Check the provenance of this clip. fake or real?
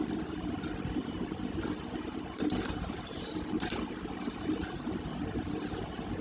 fake